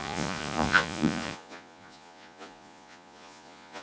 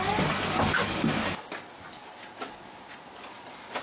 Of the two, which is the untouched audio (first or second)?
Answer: second